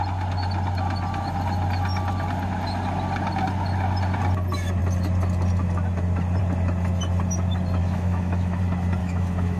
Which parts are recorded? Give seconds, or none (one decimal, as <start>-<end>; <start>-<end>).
0.0-7.8; 8.6-9.0